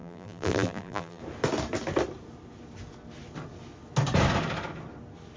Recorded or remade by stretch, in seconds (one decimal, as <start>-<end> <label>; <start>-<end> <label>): 0.0-1.2 remade; 1.2-5.4 recorded